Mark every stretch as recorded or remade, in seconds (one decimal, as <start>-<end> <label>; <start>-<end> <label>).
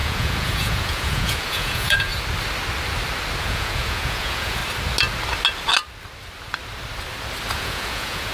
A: 0.0-2.1 remade; 2.1-3.4 recorded; 3.4-4.6 remade; 4.6-7.5 recorded; 7.5-8.3 remade